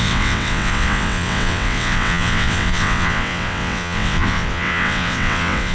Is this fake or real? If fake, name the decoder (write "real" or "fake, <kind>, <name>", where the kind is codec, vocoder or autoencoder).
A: fake, vocoder, WaveNeXt